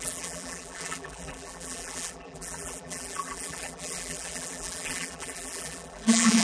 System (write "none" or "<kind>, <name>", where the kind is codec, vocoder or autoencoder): vocoder, BigVGAN v2